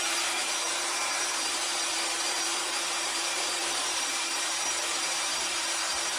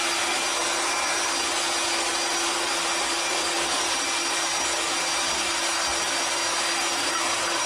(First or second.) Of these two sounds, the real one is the second